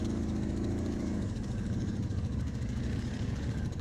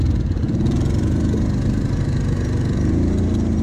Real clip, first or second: second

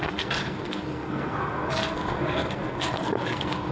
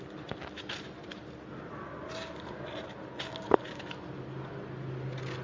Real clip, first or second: second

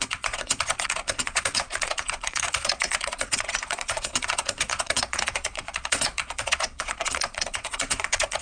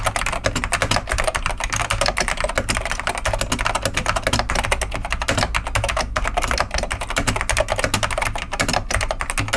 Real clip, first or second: second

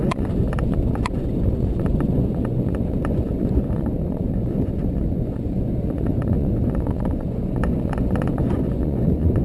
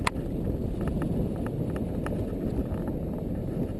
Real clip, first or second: second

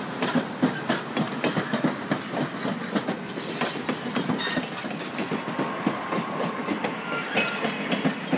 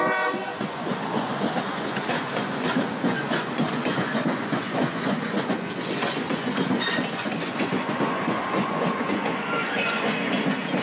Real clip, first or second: first